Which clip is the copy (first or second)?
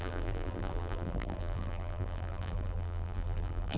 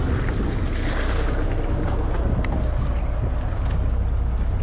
first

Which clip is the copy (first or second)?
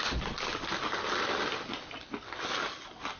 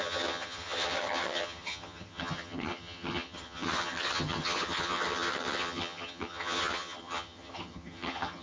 second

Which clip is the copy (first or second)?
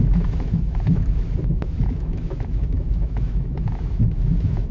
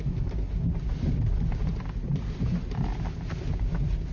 first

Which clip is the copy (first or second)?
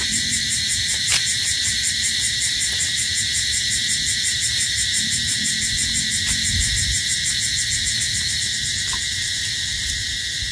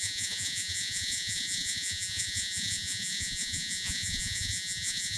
second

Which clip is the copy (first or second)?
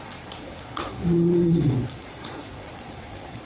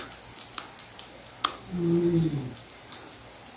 first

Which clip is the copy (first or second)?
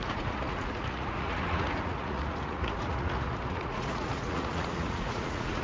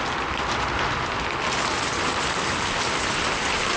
first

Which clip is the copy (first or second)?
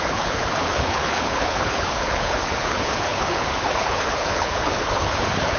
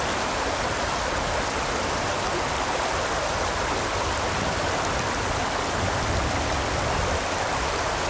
first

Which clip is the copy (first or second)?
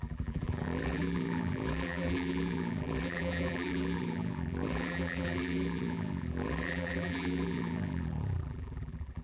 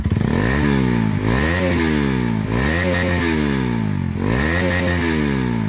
first